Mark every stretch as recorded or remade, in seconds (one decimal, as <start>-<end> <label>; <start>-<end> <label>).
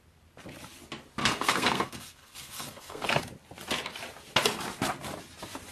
0.0-1.2 recorded; 1.2-3.2 remade; 3.2-5.7 recorded